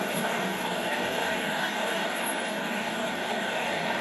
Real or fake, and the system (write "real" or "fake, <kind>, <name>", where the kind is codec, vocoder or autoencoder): fake, codec, DAC